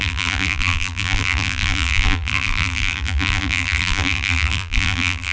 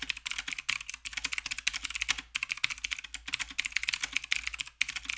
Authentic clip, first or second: second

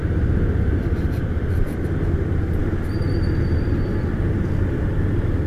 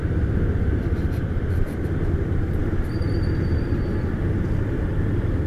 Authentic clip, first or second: first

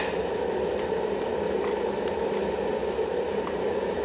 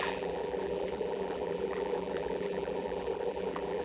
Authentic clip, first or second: first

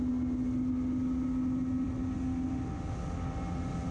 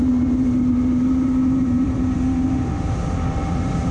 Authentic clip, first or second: first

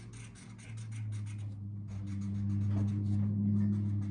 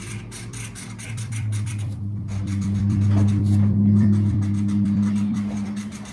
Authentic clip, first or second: first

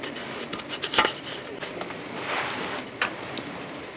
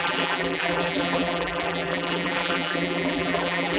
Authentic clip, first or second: first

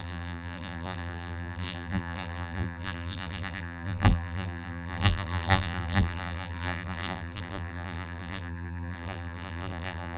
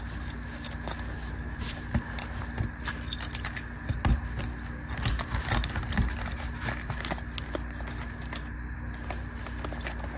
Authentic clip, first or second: second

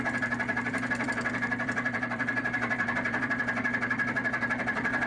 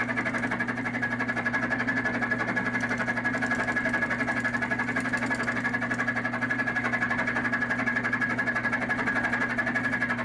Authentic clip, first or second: second